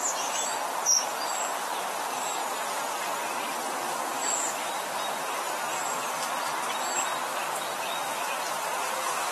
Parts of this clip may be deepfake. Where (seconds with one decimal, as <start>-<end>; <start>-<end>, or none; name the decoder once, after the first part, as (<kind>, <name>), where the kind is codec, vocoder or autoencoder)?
0.0-7.1 (vocoder, BigVGAN v2); 7.7-9.3